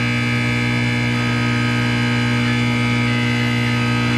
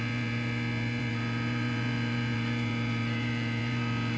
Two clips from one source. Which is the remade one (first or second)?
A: second